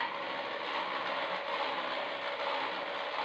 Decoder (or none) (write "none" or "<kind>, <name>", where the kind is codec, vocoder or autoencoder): none